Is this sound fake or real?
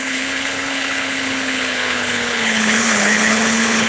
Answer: fake